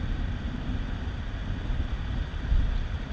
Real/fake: fake